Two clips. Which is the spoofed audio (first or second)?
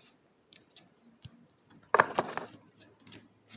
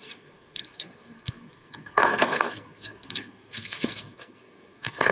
second